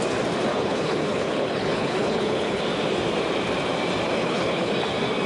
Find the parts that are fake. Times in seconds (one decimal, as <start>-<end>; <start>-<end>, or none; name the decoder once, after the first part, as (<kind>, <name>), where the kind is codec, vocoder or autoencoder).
0.5-2.6 (codec, HILCodec); 4.2-4.7